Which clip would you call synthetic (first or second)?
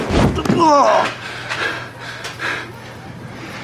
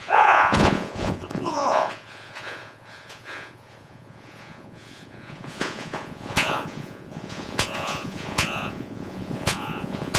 second